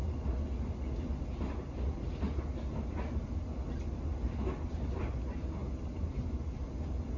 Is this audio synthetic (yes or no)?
no